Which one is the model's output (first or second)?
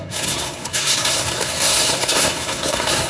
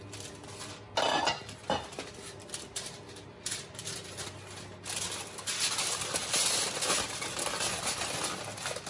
first